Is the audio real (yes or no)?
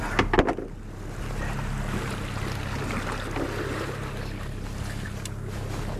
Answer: yes